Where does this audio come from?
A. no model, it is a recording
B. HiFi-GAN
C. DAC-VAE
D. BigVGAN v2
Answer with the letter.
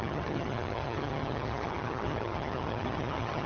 B